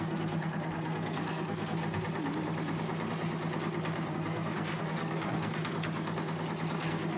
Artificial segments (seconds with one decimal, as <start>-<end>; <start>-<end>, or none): 0.0-1.8; 4.1-5.6; 6.7-7.2